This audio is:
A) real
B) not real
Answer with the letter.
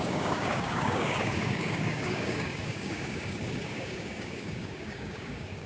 B